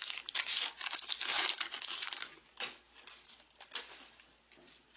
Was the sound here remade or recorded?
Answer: recorded